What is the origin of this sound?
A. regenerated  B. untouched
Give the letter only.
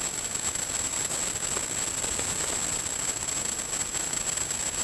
B